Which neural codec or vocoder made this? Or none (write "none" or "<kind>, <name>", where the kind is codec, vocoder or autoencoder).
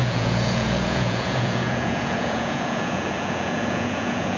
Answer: vocoder, Vocos